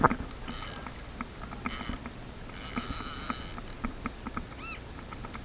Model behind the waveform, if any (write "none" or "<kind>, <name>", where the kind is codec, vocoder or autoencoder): none